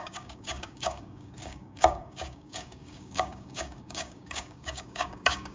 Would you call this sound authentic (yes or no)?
no